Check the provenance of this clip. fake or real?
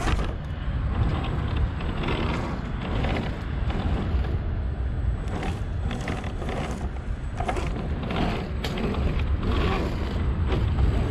real